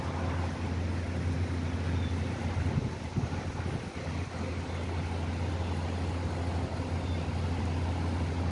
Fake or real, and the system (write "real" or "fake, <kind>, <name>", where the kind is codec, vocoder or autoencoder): real